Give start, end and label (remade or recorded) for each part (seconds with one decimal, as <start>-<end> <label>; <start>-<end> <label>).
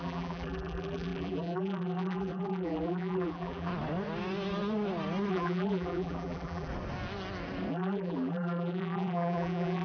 0.0-3.7 remade; 3.7-5.3 recorded; 5.3-6.7 remade; 6.7-7.7 recorded; 7.7-9.8 remade